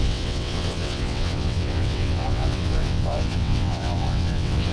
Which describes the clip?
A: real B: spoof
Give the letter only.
B